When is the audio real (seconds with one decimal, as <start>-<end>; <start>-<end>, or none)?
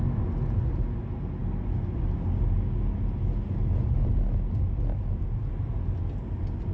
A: 0.0-6.7